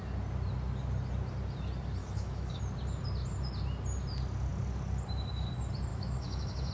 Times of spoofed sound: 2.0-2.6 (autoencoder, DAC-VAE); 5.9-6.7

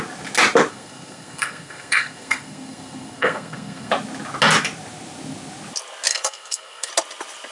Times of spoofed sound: 0.7-3.9 (codec, SNAC); 6.1-6.9

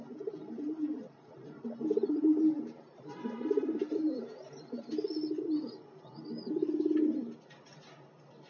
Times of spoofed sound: 0.4-4.9 (vocoder, BigVGAN v2)

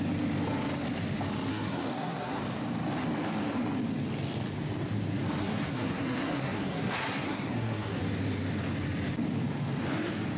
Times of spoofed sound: 1.5-2.4 (codec, SNAC); 5.4-8.0

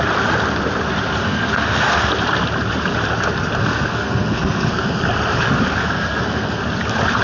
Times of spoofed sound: 1.2-2.1 (codec, SNAC); 3.6-5.0; 5.8-6.6

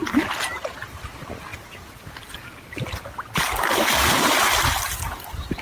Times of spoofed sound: none

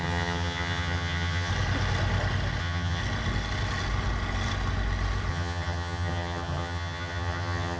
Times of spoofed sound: 0.0-1.5 (vocoder, HiFi-GAN); 2.6-3.0; 5.3-7.8

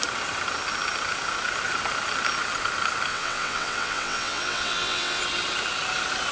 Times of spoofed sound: 3.1-5.2 (vocoder, WaveNeXt)